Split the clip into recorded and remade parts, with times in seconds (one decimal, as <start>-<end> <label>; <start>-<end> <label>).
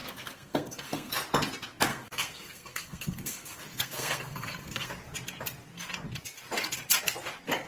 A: 0.0-1.1 remade; 1.1-1.9 recorded; 1.9-4.9 remade; 4.9-7.7 recorded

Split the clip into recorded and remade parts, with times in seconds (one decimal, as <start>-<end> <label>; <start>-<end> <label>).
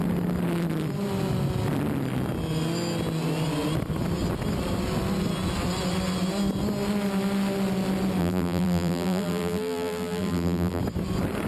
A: 0.0-8.2 recorded; 8.2-10.8 remade; 10.8-11.5 recorded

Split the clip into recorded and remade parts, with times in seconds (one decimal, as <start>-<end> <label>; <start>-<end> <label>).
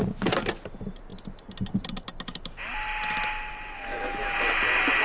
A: 0.0-5.0 recorded